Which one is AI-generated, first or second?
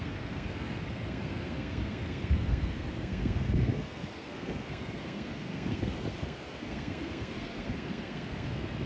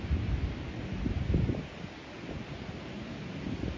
first